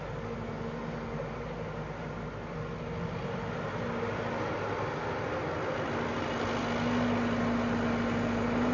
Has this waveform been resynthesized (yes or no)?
no